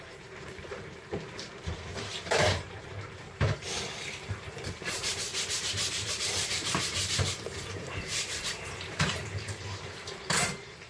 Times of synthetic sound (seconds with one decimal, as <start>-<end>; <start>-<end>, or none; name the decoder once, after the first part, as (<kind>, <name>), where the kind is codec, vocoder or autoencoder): 0.0-5.3 (vocoder, BigVGAN v2); 6.1-10.9